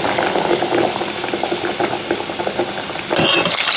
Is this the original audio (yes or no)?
yes